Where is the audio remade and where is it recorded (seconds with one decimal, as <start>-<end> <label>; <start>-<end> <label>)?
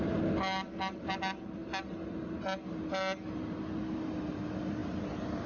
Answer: 0.0-5.5 recorded